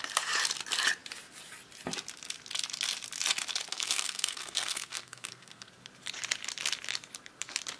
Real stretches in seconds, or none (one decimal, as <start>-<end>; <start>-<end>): 0.0-3.7; 5.7-7.8